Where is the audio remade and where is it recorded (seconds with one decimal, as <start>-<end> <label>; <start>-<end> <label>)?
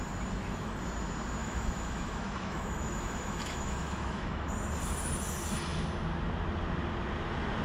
0.0-1.4 recorded; 1.4-4.5 remade; 4.5-7.6 recorded